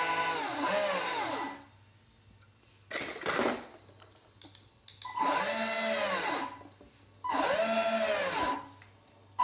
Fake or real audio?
real